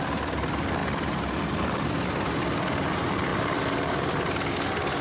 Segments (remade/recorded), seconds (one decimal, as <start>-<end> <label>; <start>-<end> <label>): 0.0-5.0 recorded